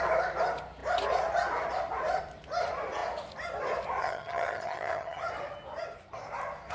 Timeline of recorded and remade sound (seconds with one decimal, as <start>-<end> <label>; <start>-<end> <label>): 0.0-4.0 recorded; 4.0-5.2 remade; 5.2-6.7 recorded